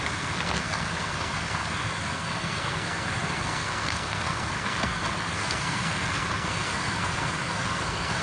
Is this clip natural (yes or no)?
no